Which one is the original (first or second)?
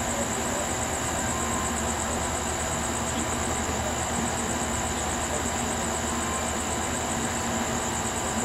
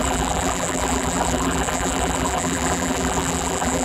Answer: first